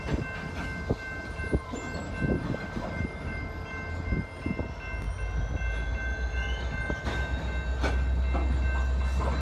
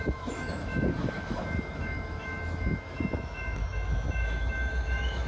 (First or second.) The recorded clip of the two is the first